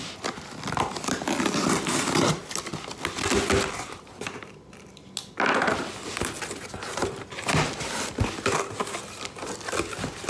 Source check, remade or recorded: recorded